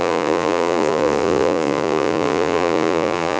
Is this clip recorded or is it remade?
remade